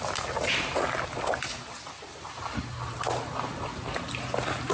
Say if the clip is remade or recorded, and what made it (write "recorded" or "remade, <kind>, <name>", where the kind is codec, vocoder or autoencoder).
recorded